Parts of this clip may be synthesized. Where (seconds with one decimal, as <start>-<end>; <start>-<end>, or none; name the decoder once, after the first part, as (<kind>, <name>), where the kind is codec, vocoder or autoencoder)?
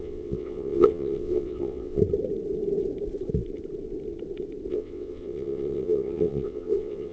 0.0-2.0 (vocoder, WaveNeXt); 4.7-7.1